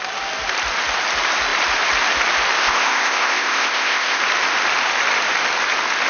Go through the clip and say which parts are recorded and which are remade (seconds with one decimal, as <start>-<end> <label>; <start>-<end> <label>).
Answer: 0.0-2.6 recorded; 2.6-4.2 remade; 4.2-6.1 recorded